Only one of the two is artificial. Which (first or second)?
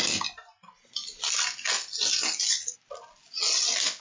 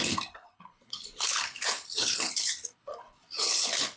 second